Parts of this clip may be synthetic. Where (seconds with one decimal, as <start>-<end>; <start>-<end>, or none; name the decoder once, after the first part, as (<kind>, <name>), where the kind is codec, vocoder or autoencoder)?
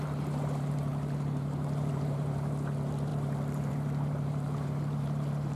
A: 0.0-5.6 (vocoder, BigVGAN v2)